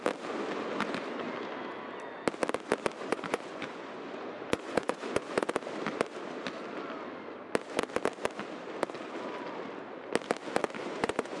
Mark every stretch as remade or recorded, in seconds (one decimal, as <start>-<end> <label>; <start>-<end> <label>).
0.0-3.1 recorded; 3.1-5.5 remade; 5.5-10.8 recorded; 10.8-11.4 remade